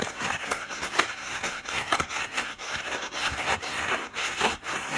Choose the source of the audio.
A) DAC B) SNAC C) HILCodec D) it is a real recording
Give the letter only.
B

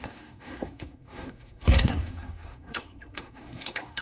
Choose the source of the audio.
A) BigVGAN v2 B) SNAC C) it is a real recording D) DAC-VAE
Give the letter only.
B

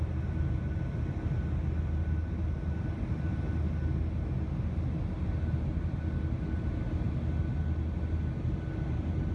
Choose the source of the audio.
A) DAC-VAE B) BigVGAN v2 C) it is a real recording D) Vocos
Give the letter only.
C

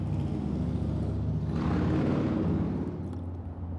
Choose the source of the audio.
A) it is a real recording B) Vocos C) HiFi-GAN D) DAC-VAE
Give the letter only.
A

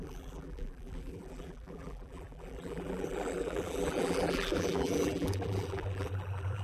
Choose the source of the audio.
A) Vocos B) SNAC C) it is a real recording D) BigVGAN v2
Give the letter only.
D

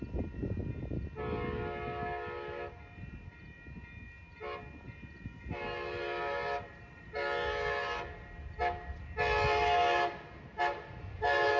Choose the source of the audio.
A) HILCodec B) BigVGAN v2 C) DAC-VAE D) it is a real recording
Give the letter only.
D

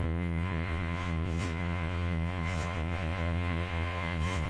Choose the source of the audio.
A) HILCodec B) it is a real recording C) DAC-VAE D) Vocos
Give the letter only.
D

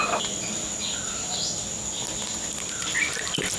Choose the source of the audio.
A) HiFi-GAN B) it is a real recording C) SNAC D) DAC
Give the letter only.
B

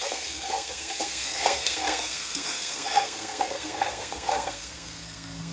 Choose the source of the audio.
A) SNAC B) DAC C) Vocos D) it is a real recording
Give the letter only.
A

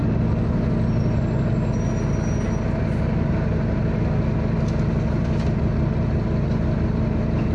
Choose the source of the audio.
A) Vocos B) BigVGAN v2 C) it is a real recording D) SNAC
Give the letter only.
C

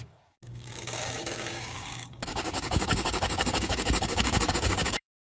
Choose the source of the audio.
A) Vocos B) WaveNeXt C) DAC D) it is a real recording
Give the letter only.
C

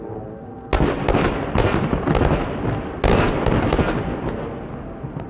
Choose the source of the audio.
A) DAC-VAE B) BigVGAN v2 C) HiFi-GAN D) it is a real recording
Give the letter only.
D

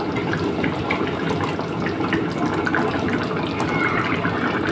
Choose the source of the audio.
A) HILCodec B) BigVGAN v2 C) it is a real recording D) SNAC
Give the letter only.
C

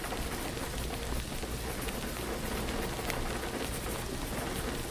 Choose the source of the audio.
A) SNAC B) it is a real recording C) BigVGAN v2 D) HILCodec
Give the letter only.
B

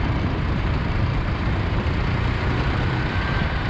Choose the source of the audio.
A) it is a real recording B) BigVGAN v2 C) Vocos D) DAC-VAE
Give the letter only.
B